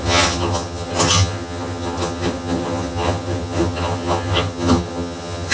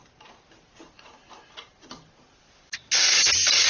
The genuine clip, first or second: second